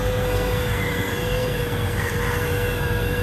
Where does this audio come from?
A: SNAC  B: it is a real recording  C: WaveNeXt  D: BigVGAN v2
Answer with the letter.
A